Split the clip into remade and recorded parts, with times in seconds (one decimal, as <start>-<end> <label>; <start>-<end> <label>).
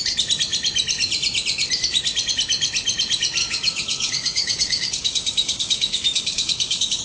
0.0-3.4 recorded; 3.4-7.0 remade